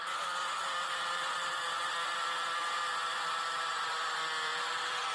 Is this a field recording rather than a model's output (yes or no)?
no